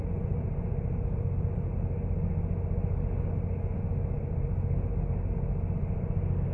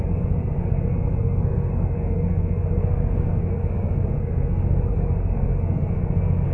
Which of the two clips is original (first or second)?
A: first